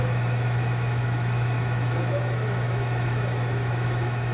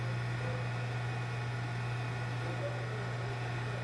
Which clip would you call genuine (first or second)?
second